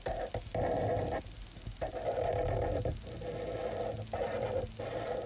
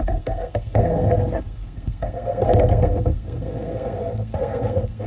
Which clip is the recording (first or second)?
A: first